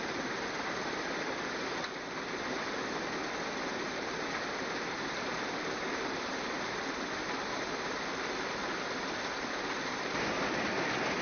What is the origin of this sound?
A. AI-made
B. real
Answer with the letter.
B